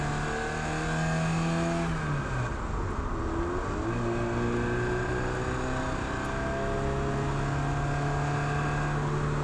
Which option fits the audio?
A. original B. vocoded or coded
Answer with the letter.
A